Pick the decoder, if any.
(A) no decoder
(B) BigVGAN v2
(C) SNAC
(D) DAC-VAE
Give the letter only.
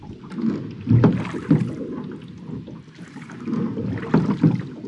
A